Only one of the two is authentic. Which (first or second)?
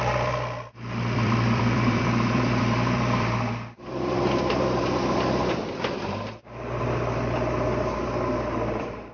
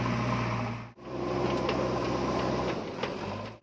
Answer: second